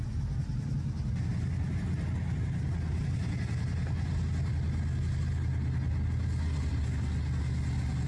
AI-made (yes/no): no